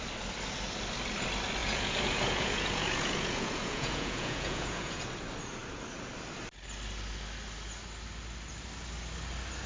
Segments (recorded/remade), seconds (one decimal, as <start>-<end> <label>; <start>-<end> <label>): 0.0-1.6 recorded; 1.6-5.0 remade; 5.0-9.7 recorded